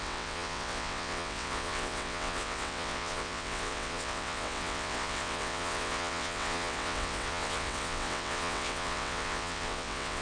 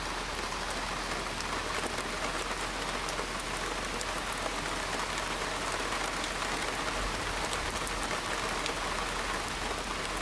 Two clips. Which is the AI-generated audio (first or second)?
first